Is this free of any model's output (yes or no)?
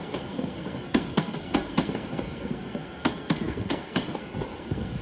no